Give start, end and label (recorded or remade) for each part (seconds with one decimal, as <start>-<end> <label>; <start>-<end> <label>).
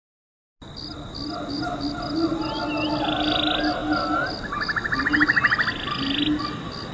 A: 0.0-6.9 recorded